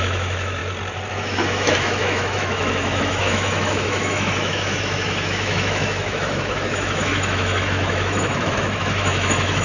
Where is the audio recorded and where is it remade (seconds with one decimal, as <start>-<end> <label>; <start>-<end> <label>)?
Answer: 0.0-0.6 remade; 0.6-1.1 recorded; 1.1-9.6 remade